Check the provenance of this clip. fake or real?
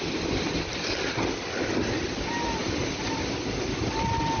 real